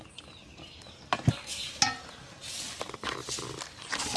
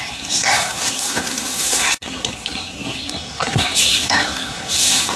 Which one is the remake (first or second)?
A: second